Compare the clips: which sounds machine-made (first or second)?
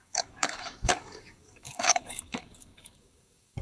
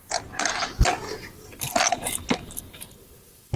first